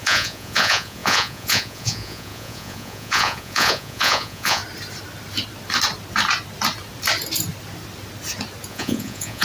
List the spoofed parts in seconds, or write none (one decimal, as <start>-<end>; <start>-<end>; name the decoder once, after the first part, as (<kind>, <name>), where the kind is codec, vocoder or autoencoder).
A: 0.0-4.6 (vocoder, Vocos); 8.7-9.4